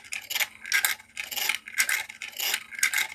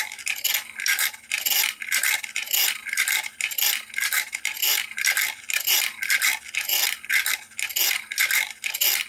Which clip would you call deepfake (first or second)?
second